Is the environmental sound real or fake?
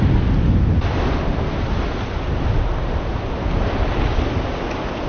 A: real